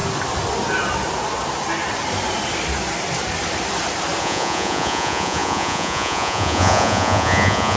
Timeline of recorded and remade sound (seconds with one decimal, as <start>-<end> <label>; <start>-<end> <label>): 0.0-4.2 recorded; 4.2-7.8 remade